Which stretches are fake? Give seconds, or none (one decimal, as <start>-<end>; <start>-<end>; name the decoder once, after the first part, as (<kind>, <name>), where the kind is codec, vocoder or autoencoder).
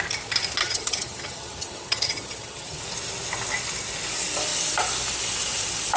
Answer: 0.6-2.8 (vocoder, HiFi-GAN)